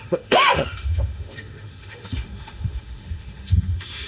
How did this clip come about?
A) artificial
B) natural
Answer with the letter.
A